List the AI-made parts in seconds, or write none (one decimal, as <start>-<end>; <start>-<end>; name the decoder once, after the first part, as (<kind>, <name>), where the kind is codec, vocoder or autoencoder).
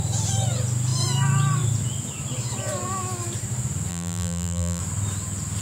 3.9-4.8 (vocoder, BigVGAN v2)